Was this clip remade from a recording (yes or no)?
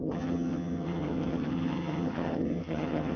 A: yes